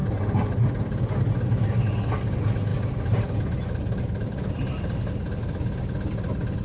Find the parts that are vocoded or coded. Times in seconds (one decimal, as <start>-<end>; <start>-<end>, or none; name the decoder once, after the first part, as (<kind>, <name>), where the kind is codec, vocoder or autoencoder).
0.0-1.3 (vocoder, BigVGAN v2); 2.7-5.1